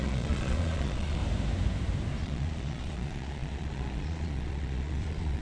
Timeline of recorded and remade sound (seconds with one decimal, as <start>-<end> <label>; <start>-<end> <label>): 0.0-1.2 remade; 1.2-2.2 recorded; 2.2-5.4 remade